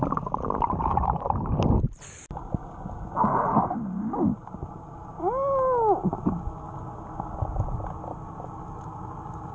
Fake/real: real